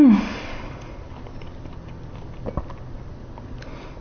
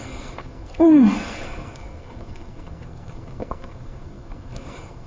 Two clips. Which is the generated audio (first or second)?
second